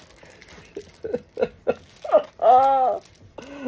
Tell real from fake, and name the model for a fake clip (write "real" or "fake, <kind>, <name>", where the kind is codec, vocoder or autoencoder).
real